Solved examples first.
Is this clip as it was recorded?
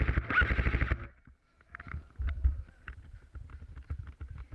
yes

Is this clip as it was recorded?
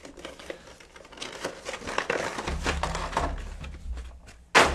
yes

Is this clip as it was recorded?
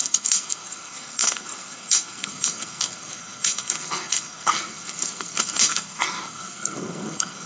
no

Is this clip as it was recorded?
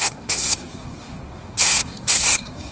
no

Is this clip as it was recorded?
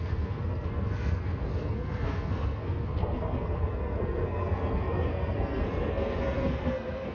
no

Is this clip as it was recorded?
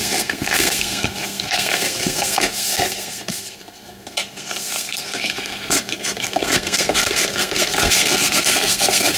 no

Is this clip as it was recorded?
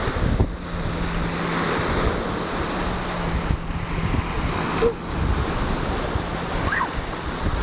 yes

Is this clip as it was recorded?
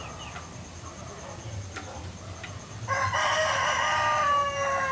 yes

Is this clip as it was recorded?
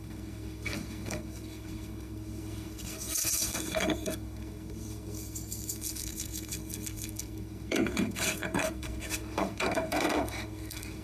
no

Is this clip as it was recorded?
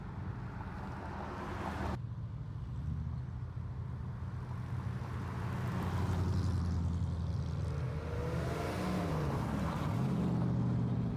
yes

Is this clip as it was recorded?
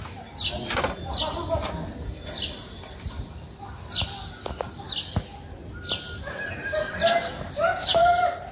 yes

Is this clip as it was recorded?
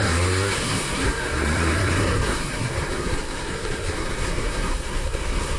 no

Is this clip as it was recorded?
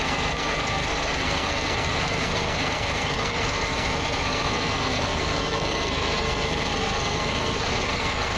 no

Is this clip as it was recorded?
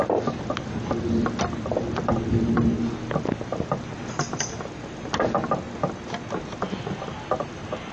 yes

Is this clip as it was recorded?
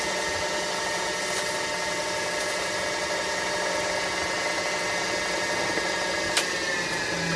yes